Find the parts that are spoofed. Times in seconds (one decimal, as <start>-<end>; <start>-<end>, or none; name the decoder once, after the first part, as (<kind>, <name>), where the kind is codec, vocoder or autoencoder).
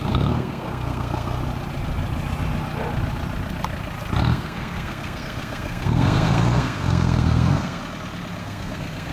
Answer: 0.0-1.4 (codec, SNAC); 4.2-7.8; 8.4-9.1